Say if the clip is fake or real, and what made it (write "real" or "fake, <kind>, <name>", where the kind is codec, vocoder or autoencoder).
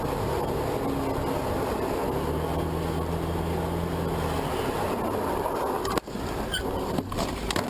real